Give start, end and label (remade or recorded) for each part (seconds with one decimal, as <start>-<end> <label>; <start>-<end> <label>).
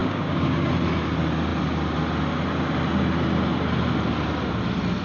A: 0.0-0.7 remade; 0.7-5.0 recorded